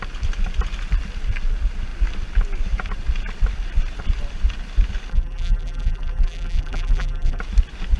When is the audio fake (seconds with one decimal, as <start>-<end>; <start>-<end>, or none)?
5.1-7.4